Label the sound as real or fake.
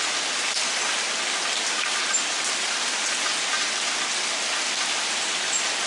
real